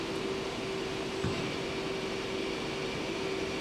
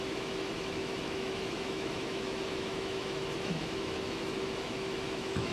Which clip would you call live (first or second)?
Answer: first